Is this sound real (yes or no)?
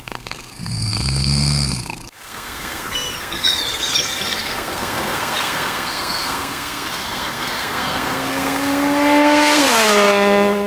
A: no